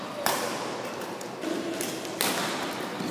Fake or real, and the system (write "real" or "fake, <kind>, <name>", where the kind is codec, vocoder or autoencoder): real